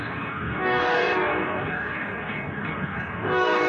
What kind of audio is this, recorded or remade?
remade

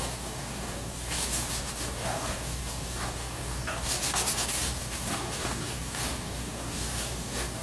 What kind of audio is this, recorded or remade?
remade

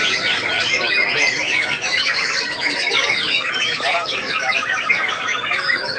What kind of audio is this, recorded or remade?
remade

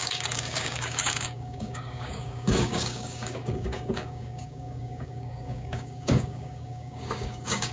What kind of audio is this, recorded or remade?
remade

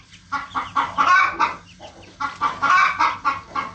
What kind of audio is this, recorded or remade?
recorded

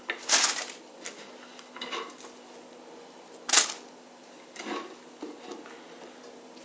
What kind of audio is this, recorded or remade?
recorded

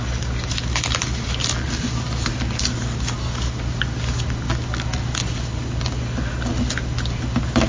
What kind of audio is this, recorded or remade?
recorded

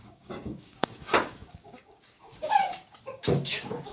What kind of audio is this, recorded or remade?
remade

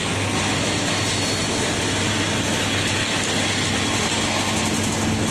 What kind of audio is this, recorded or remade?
recorded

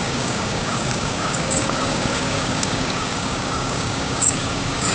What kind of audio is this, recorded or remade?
remade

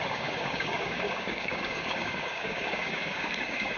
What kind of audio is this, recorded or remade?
remade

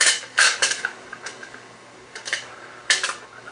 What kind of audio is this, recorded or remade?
remade